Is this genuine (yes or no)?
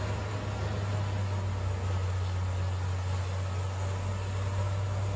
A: yes